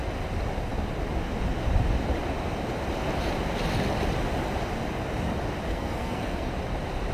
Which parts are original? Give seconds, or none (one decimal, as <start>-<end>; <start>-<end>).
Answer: 0.0-5.7; 6.5-7.1